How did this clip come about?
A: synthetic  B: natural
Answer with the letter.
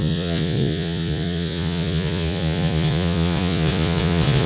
A